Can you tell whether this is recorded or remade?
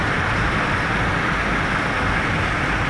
recorded